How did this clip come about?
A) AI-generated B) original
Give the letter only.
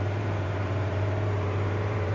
A